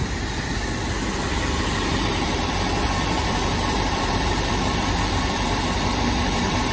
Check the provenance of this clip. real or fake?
fake